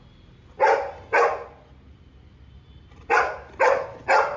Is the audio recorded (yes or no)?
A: yes